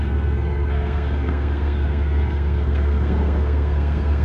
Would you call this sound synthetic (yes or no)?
yes